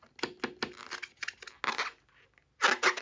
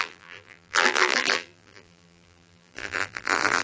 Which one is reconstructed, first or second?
second